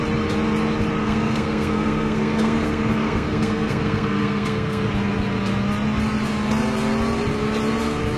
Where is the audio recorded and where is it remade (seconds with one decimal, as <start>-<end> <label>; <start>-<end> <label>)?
0.0-1.0 recorded; 1.0-4.9 remade; 4.9-8.2 recorded